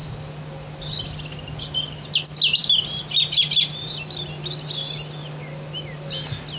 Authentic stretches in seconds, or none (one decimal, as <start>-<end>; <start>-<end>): 0.0-6.6